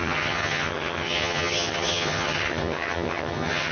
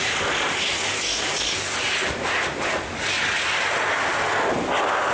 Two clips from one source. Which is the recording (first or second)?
second